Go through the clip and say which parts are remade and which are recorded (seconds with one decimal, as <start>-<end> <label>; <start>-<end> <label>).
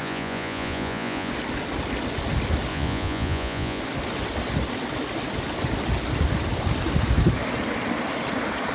0.0-1.3 remade; 1.3-2.7 recorded; 2.7-3.8 remade; 3.8-8.7 recorded